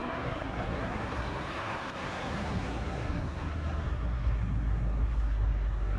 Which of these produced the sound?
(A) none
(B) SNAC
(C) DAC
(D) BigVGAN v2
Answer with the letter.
B